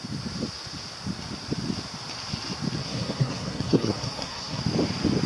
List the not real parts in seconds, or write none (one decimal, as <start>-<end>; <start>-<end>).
2.8-4.6